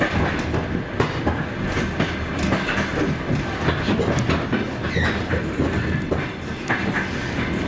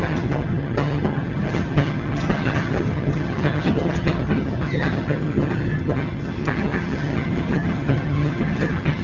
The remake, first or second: second